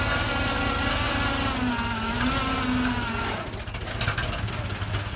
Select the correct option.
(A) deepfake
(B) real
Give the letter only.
B